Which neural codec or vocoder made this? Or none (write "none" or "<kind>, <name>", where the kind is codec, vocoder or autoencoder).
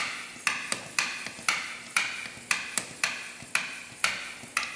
none